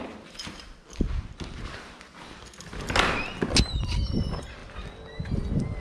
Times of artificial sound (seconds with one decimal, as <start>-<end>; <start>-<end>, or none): none